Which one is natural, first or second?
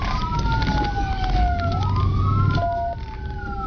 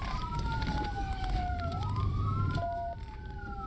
first